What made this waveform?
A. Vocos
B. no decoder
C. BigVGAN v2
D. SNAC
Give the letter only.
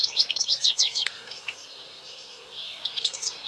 D